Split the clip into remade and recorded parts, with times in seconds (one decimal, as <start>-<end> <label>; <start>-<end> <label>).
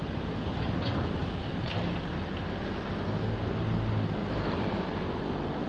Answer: 0.0-1.2 recorded; 1.2-1.8 remade; 1.8-4.2 recorded; 4.2-5.2 remade; 5.2-5.7 recorded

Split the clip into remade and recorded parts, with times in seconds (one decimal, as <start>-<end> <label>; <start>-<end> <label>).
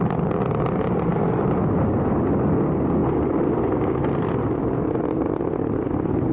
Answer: 0.0-1.1 recorded; 1.1-2.1 remade; 2.1-3.0 recorded; 3.0-5.0 remade; 5.0-6.3 recorded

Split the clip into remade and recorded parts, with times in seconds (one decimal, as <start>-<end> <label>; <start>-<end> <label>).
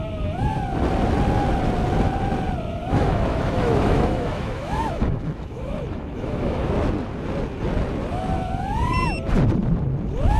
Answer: 0.0-2.8 recorded; 2.8-6.7 remade; 6.7-10.4 recorded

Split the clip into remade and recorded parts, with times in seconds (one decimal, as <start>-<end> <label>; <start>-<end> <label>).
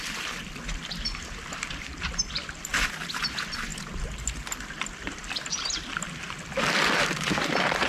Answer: 0.0-2.7 remade; 2.7-3.3 recorded; 3.3-3.7 remade; 3.7-4.5 recorded; 4.5-7.9 remade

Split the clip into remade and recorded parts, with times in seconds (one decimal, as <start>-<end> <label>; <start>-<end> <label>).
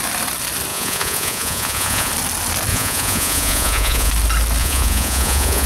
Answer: 0.0-0.7 recorded; 0.7-2.1 remade; 2.1-2.7 recorded; 2.7-4.1 remade; 4.1-4.6 recorded; 4.6-5.7 remade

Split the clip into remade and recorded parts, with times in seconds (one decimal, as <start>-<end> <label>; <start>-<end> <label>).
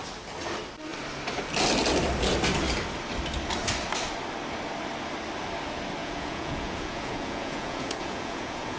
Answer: 0.0-6.0 recorded; 6.0-8.8 remade